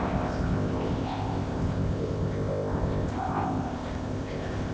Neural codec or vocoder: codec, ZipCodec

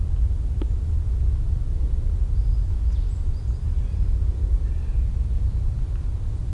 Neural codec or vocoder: none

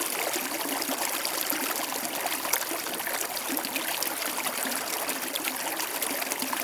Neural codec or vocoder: none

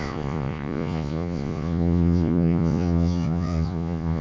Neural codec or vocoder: vocoder, Vocos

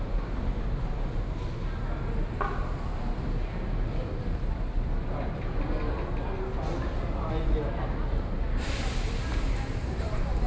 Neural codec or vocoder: none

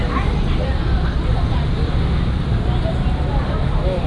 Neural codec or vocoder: none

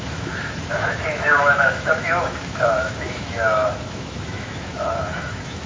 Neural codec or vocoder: autoencoder, DAC-VAE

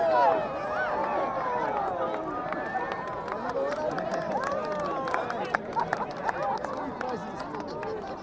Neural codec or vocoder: none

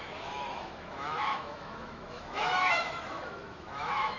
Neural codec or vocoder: autoencoder, DAC-VAE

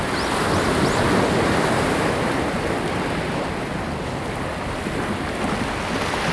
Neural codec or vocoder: none